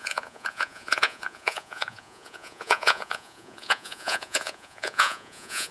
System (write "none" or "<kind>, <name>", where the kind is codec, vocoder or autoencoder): vocoder, Vocos